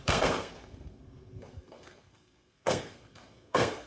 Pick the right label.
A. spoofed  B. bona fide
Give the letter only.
A